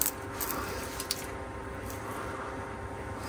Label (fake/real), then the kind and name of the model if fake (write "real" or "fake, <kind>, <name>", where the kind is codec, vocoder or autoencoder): real